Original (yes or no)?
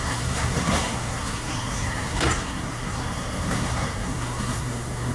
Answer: no